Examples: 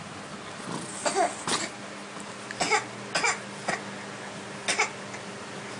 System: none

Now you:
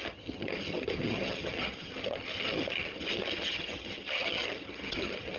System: vocoder, HiFi-GAN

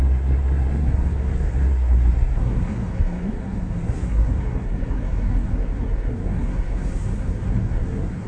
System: codec, SNAC